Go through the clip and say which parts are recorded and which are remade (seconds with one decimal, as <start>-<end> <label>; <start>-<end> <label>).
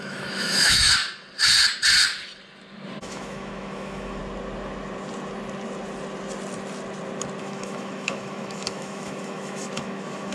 0.0-1.0 remade; 1.0-3.0 recorded; 3.0-4.2 remade; 4.2-7.4 recorded; 7.4-10.3 remade